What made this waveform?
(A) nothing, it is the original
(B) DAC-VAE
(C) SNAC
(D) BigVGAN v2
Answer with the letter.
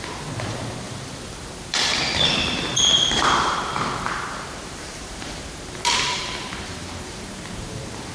D